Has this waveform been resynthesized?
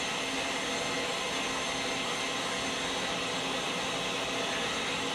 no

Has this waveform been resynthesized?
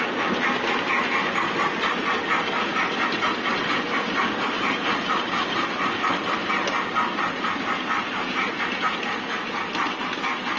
no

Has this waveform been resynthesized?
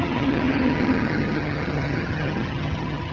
yes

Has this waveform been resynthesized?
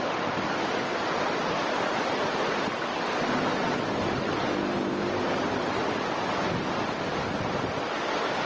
no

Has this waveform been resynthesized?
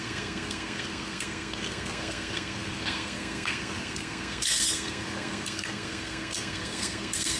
yes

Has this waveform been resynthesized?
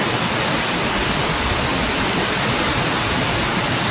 no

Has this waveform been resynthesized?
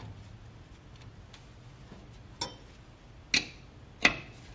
no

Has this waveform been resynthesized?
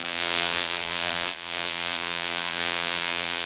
yes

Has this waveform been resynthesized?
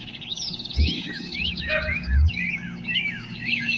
yes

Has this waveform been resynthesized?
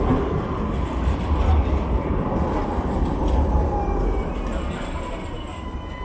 no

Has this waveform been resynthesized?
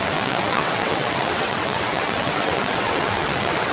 yes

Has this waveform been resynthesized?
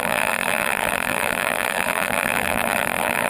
yes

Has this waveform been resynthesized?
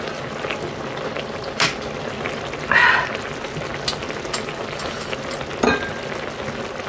no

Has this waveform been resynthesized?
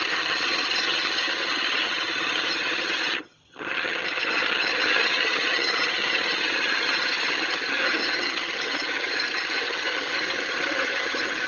yes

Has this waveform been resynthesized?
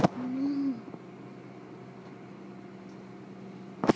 no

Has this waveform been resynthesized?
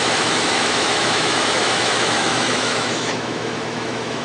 yes